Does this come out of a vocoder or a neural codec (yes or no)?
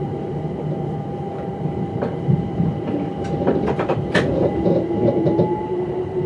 yes